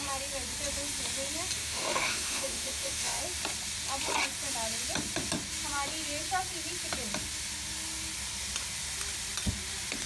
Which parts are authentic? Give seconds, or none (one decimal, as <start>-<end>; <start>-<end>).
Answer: 0.0-1.6; 3.2-10.1